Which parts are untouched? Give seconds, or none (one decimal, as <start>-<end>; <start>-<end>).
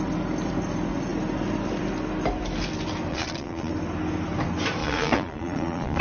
0.0-3.1; 3.7-4.8